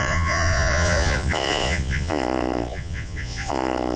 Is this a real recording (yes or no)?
no